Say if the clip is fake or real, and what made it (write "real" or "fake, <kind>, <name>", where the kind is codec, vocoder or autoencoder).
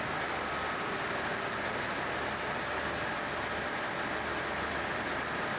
real